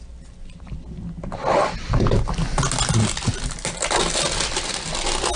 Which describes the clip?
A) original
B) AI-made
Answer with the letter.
A